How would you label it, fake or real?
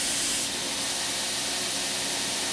real